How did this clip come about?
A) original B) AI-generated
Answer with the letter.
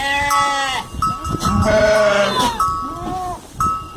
A